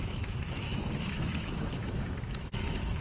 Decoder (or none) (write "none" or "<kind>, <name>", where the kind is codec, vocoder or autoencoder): autoencoder, DAC-VAE